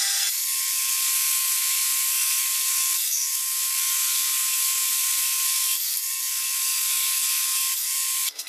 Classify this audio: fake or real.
fake